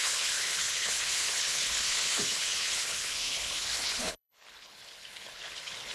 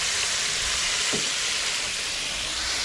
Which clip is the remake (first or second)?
first